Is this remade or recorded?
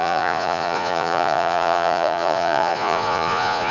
remade